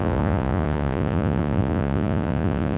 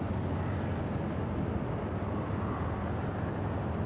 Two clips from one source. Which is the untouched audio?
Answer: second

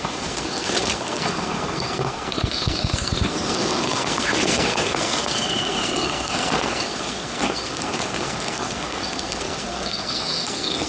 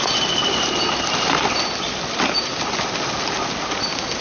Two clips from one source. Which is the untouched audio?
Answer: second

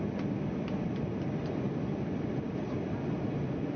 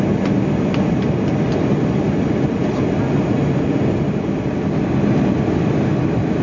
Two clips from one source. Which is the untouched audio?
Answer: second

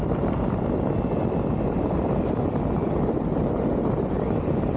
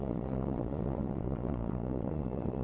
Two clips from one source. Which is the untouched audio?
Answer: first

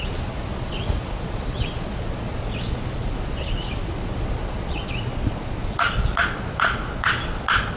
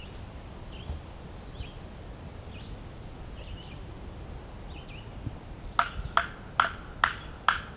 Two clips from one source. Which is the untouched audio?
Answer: second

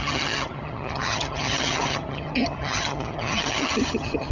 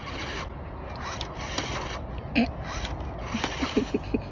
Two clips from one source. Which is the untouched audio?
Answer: second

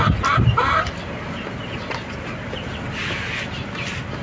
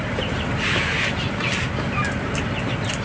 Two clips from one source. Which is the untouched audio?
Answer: first